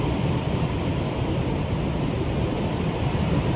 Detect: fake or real fake